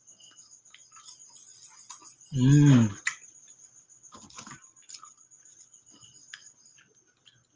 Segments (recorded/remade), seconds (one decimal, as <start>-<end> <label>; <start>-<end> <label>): 0.0-7.6 recorded